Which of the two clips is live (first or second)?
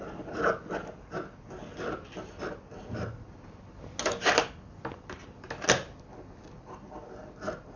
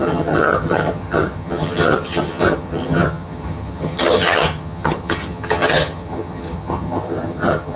first